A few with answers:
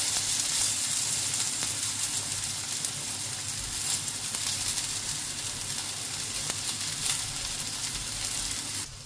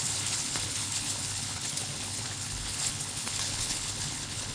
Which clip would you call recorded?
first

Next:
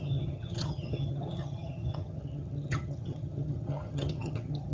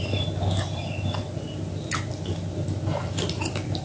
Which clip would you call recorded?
second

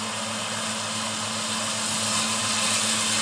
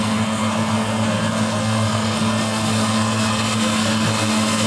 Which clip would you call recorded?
first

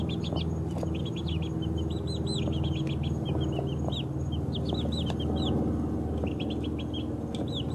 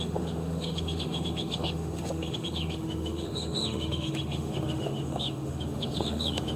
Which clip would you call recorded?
first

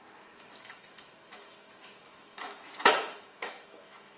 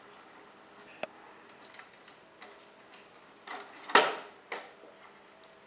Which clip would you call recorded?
second